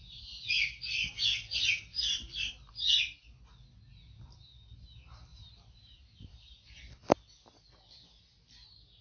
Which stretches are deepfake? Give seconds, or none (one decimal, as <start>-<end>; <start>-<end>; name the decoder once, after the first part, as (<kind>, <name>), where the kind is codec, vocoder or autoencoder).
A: 0.0-0.6 (vocoder, BigVGAN v2); 1.9-2.7; 5.3-6.8